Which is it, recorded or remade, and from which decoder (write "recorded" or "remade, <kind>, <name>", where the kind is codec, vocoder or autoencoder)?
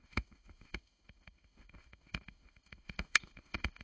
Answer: remade, autoencoder, DAC-VAE